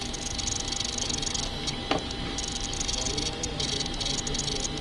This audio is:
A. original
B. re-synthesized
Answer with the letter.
A